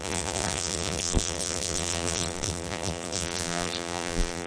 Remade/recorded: remade